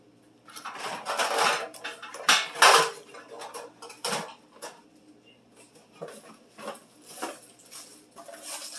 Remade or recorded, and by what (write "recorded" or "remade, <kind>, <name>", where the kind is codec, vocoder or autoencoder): recorded